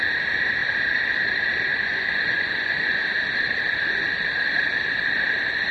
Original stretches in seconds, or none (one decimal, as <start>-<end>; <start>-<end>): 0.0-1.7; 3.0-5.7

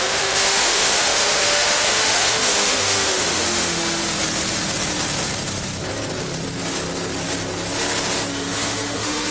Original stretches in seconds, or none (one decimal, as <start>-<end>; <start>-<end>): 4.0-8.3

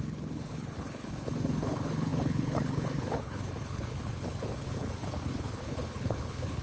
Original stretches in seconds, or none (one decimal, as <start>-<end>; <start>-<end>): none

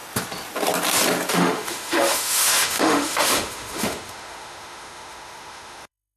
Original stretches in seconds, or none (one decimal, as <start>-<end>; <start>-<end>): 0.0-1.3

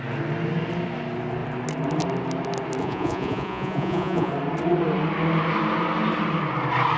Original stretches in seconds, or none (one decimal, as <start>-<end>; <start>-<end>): 0.0-2.8; 4.3-7.0

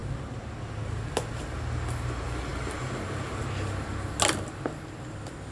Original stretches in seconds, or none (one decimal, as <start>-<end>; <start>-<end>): 0.0-5.5